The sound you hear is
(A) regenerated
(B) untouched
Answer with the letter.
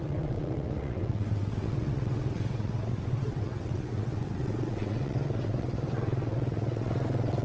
A